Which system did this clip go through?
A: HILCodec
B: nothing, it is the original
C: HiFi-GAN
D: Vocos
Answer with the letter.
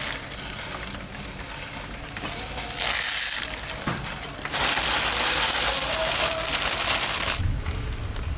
B